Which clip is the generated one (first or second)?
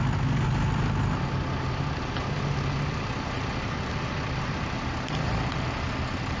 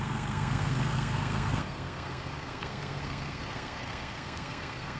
second